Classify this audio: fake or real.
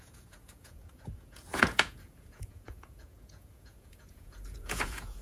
fake